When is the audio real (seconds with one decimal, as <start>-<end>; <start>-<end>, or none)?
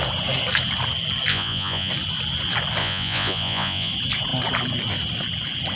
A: 0.0-1.3; 1.9-2.8; 3.9-5.8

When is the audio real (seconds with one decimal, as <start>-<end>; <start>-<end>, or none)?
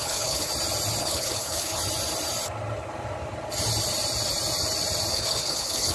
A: 0.5-1.0; 1.8-5.1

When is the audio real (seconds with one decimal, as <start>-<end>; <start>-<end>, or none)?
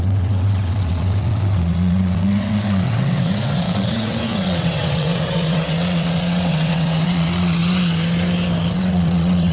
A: 7.6-8.7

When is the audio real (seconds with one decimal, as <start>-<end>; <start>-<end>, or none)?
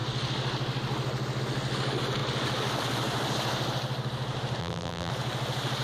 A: 0.0-4.6; 5.1-5.8